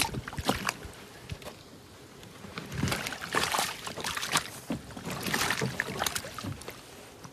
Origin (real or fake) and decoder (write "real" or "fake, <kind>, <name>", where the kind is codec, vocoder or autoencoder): real